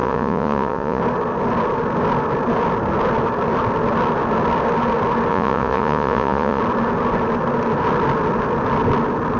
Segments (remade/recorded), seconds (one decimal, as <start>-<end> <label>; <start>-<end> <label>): 0.0-1.0 remade; 1.0-5.3 recorded; 5.3-6.6 remade; 6.6-9.4 recorded